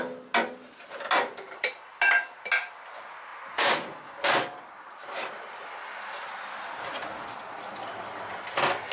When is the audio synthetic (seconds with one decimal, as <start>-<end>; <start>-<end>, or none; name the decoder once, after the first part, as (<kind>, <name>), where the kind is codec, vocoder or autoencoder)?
none